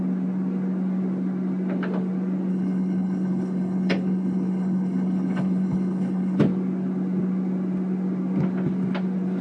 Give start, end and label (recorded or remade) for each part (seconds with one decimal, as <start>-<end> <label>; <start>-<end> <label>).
0.0-2.5 recorded; 2.5-6.4 remade; 6.4-9.4 recorded